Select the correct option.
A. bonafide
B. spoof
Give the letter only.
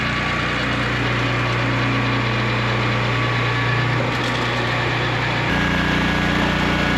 A